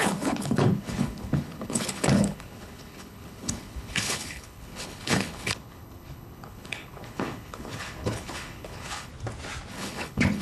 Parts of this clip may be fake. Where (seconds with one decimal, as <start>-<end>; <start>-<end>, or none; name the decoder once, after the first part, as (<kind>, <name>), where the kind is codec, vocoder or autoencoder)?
0.0-9.1 (codec, HILCodec); 9.7-10.4